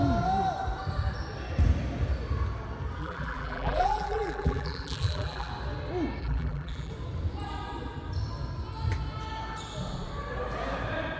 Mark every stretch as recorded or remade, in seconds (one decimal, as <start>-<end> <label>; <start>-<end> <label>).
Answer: 0.0-3.0 recorded; 3.0-5.5 remade; 5.5-6.2 recorded; 6.2-6.9 remade; 6.9-11.2 recorded